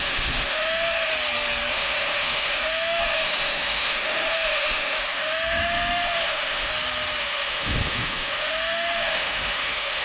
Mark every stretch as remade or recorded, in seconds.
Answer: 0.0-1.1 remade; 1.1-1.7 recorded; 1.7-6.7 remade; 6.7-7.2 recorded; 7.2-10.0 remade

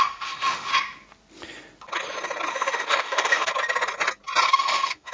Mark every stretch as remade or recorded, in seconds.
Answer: 0.0-0.7 remade; 0.7-2.5 recorded; 2.5-3.5 remade; 3.5-4.5 recorded; 4.5-5.1 remade